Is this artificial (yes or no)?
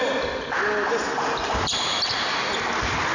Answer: no